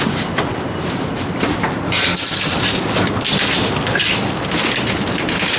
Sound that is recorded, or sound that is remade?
recorded